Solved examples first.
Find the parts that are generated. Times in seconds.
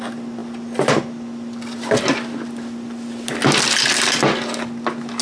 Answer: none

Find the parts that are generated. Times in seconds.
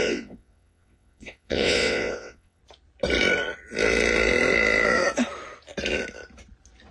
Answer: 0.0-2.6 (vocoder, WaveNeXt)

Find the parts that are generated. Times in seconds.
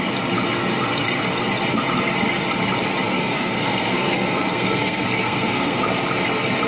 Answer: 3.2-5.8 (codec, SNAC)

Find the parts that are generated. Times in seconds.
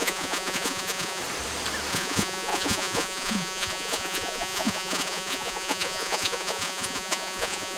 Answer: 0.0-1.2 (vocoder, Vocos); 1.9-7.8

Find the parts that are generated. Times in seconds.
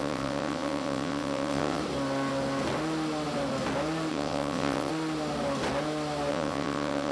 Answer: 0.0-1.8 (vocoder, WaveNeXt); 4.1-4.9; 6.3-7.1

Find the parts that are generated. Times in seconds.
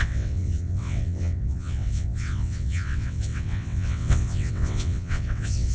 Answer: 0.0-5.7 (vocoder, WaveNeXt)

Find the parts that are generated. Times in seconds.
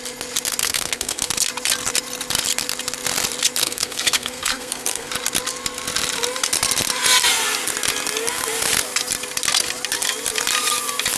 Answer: 0.6-1.3 (codec, SNAC); 3.6-5.1